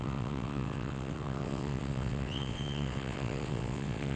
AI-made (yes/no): yes